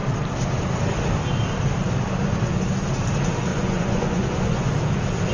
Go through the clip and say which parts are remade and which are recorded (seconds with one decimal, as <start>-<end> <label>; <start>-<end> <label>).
0.0-3.5 recorded; 3.5-4.7 remade; 4.7-5.3 recorded